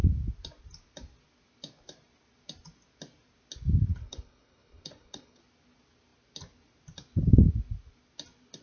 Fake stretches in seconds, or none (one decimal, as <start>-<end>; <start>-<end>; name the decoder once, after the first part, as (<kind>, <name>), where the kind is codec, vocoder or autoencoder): 3.9-5.4 (codec, HILCodec)

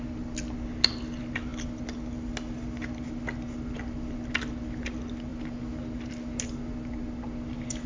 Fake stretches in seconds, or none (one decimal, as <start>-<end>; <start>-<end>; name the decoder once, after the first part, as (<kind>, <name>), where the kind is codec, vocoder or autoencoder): none

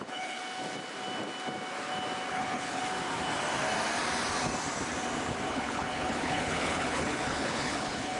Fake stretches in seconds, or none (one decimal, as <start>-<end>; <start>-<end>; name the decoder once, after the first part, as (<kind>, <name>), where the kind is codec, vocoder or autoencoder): 0.0-0.4 (codec, HILCodec); 2.3-2.8; 5.5-8.2

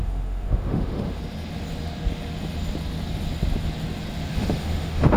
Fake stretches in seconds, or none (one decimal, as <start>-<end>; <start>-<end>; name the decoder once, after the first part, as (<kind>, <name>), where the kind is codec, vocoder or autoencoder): 0.0-1.2 (autoencoder, DAC-VAE); 4.3-5.2